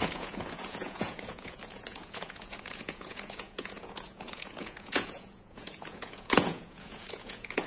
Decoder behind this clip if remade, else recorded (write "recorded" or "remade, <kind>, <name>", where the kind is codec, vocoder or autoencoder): remade, vocoder, Vocos